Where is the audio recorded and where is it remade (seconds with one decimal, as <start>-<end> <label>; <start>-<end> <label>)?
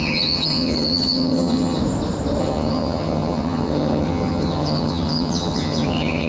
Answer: 0.0-1.8 remade; 1.8-2.4 recorded; 2.4-6.3 remade